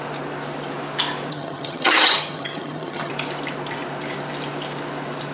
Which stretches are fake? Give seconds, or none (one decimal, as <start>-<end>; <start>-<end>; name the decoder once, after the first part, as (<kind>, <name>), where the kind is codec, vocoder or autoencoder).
1.3-3.1 (vocoder, HiFi-GAN)